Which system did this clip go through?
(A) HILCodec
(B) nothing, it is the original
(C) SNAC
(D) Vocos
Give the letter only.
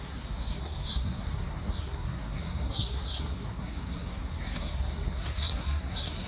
C